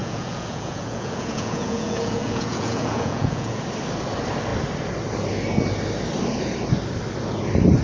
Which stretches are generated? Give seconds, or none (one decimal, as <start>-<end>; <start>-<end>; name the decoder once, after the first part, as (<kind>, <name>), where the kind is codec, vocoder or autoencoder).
0.0-3.6 (vocoder, Vocos)